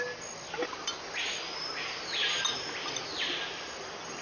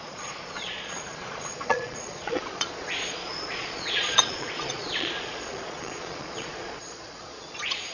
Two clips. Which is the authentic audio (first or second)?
first